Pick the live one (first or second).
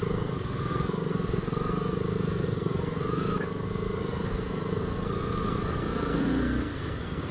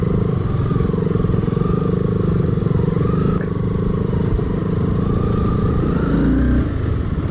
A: second